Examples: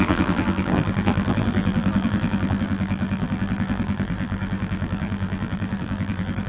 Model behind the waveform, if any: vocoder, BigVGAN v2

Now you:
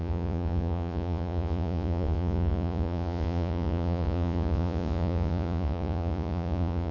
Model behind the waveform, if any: vocoder, Vocos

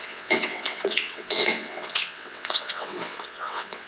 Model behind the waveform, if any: vocoder, WaveNeXt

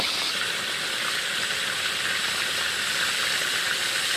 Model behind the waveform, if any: none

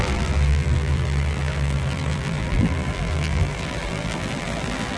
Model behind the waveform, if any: vocoder, BigVGAN v2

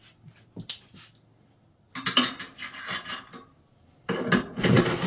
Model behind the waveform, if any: none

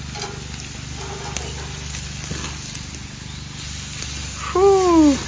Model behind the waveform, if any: none